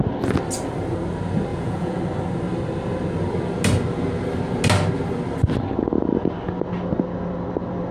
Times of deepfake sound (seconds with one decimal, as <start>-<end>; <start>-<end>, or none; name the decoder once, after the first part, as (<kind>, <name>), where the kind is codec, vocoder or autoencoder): 1.5-2.0 (vocoder, Vocos)